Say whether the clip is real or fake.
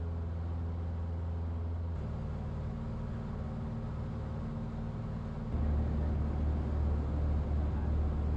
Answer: real